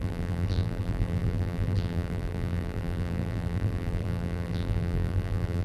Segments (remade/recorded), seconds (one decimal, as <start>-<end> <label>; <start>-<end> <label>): 0.0-5.6 remade